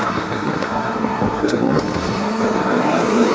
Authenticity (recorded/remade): remade